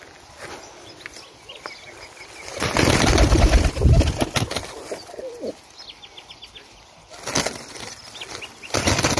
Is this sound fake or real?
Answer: real